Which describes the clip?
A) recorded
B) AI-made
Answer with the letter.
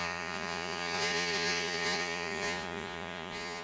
B